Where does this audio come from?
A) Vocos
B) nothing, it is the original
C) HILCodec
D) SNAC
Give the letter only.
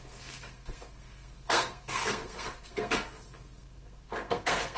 D